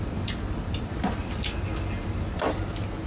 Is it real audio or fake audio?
real